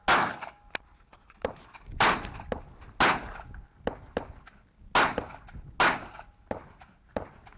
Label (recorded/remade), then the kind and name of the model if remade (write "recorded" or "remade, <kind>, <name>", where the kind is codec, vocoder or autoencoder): recorded